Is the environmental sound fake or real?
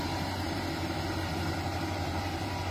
fake